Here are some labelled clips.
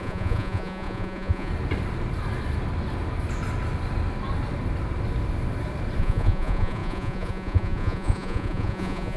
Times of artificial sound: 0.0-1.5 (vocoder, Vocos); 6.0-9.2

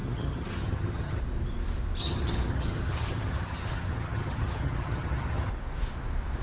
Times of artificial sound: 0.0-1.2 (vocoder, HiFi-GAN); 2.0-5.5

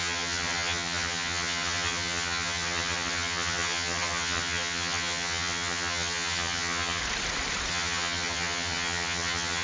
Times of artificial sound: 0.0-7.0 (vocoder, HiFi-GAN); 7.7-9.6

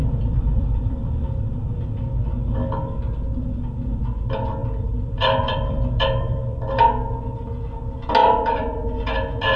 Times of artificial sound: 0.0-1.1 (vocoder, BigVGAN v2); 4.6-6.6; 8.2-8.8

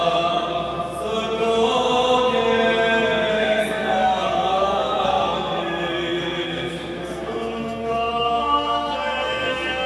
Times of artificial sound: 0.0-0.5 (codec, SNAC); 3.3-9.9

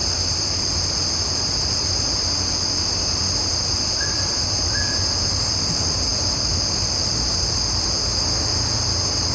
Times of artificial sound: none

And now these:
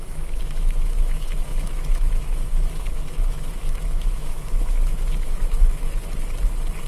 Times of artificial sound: 0.0-6.0 (autoencoder, DAC-VAE)